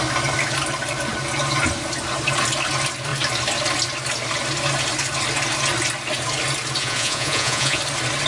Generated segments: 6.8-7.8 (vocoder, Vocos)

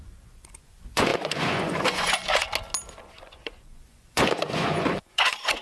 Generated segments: 0.0-2.5 (vocoder, Vocos); 3.0-5.6